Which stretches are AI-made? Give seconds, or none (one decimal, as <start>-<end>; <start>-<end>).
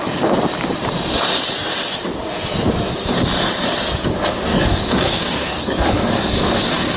4.5-7.0